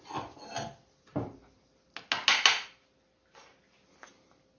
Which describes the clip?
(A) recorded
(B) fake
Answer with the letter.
A